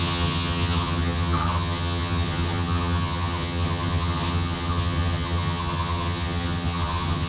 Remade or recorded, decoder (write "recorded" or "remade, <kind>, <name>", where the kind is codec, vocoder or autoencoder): remade, vocoder, HiFi-GAN